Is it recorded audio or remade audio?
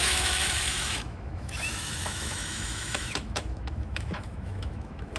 remade